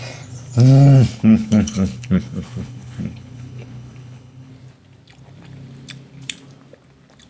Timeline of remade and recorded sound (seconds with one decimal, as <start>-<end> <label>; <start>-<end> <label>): 0.0-1.1 recorded; 1.1-4.5 remade; 4.5-7.3 recorded

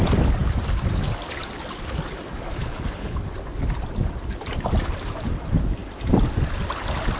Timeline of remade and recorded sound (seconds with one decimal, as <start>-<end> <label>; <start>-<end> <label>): 0.0-2.6 recorded; 2.6-3.3 remade; 3.3-7.2 recorded